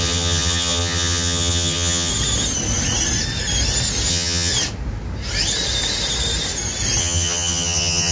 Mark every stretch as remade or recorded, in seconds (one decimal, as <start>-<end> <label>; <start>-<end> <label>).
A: 0.0-2.1 remade; 2.1-4.1 recorded; 4.1-4.5 remade; 4.5-7.0 recorded; 7.0-8.1 remade